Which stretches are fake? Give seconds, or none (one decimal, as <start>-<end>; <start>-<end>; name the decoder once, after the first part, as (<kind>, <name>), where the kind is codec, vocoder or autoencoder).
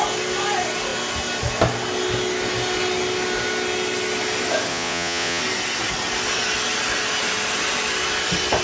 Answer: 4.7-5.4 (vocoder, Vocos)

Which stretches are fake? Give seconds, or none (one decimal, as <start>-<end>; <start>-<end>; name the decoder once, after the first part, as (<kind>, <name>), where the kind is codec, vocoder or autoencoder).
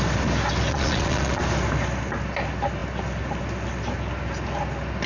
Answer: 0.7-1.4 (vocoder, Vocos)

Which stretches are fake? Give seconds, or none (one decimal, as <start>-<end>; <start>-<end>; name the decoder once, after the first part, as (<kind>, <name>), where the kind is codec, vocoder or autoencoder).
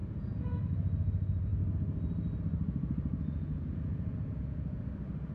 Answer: 0.0-0.6 (vocoder, Vocos); 3.1-4.8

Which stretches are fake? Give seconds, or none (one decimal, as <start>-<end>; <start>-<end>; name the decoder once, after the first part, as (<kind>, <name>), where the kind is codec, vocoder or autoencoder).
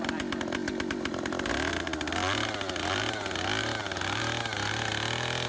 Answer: none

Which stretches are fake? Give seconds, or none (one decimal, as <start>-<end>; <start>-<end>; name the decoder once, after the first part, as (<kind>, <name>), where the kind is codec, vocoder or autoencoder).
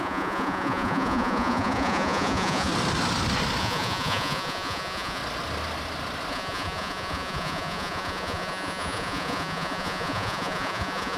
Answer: 0.0-2.7 (vocoder, Vocos); 3.6-5.2; 6.3-11.2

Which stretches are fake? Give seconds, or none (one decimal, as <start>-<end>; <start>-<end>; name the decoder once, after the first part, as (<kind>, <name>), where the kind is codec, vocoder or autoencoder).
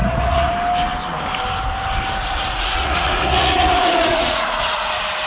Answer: 0.0-0.5 (vocoder, Vocos); 2.2-4.8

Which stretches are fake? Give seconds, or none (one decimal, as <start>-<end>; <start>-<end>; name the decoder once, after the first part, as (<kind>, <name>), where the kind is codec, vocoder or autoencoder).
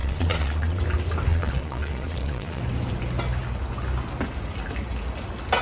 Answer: 0.0-0.8 (vocoder, Vocos); 1.3-2.6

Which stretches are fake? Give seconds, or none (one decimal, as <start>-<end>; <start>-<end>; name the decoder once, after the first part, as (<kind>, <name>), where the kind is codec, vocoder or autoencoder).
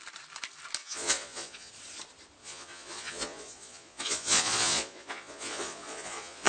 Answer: 0.8-1.7 (vocoder, Vocos); 2.4-6.5